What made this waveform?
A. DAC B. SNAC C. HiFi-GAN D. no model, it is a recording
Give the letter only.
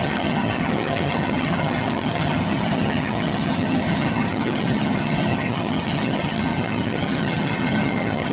C